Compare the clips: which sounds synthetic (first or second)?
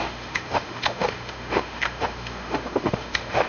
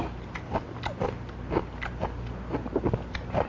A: first